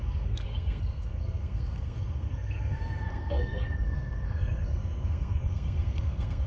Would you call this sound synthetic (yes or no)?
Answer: yes